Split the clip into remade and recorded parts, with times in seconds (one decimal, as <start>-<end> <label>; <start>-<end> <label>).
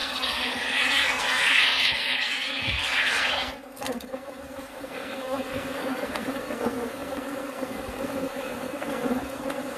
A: 0.0-9.8 remade